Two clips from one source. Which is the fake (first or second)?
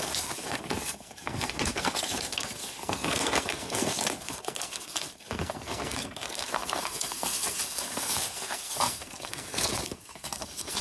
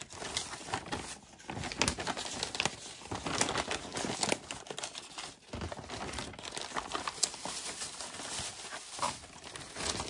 first